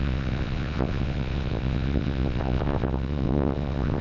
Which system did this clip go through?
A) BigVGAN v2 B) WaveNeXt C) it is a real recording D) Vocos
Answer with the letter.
B